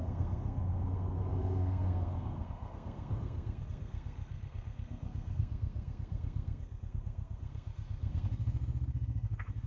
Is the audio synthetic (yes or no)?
yes